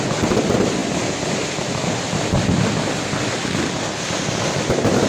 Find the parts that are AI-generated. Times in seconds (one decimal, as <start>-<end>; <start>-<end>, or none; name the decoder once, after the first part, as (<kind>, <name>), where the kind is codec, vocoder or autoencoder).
0.8-2.9 (vocoder, BigVGAN v2)

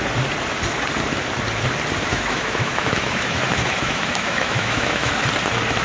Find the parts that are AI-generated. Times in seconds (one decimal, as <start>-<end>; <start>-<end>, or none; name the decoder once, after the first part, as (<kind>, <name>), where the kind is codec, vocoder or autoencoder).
2.1-5.1 (autoencoder, DAC-VAE)